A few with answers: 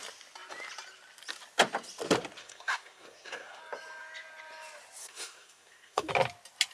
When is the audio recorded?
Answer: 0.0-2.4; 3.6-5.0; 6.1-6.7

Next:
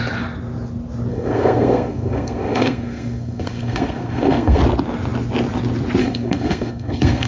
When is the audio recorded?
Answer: 0.0-1.1; 4.6-6.0

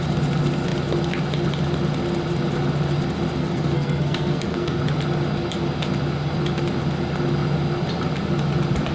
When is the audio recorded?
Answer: 0.0-3.4; 4.8-8.9

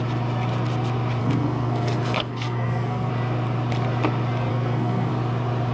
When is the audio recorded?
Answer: 0.0-1.2; 3.1-4.5; 5.1-5.7

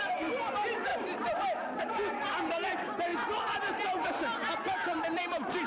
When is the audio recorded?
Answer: 0.0-5.7

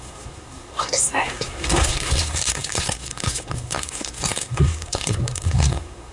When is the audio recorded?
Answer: none

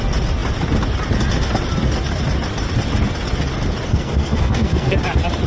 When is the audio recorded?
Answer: 0.0-3.9; 5.0-5.5